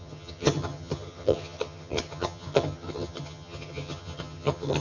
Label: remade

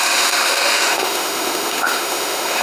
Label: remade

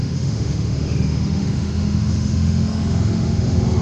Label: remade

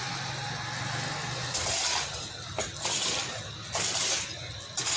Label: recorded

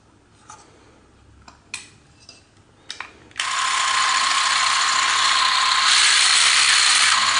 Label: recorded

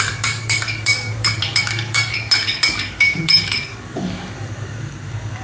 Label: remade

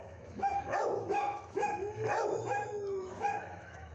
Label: remade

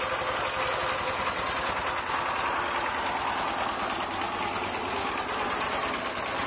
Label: recorded